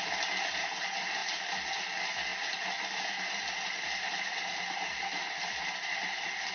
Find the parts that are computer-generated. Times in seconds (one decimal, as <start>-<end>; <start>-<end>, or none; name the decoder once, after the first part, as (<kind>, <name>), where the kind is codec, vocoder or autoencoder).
1.2-1.8 (vocoder, BigVGAN v2); 2.3-6.5